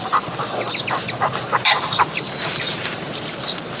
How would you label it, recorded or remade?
remade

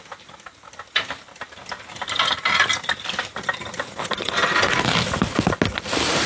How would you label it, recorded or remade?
recorded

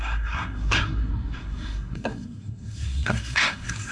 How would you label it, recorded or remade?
remade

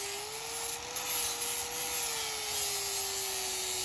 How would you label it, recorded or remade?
recorded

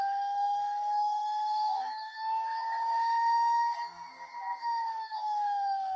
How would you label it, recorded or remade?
remade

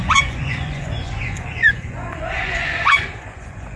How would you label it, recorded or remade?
remade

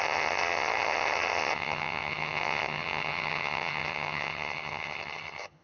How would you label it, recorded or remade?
remade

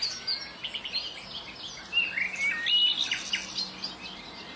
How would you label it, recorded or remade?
recorded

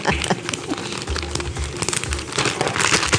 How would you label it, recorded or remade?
recorded